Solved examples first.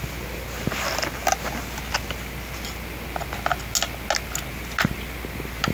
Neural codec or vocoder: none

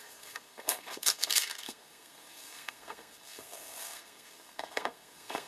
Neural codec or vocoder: codec, SNAC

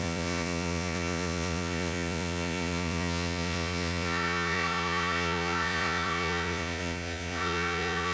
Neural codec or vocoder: vocoder, Vocos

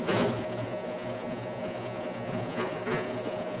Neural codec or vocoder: vocoder, Vocos